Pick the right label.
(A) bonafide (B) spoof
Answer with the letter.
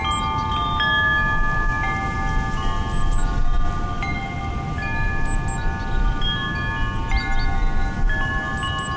A